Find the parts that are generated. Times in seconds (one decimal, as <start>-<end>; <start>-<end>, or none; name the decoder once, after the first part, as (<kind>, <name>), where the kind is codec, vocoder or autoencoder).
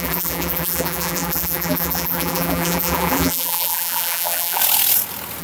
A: 0.0-4.6 (vocoder, BigVGAN v2)